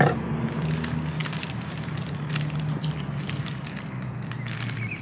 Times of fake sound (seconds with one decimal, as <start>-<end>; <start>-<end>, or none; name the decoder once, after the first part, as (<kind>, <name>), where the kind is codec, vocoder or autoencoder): none